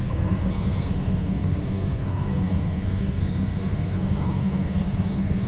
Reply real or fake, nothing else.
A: fake